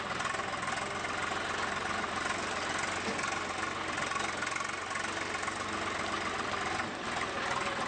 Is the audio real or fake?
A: real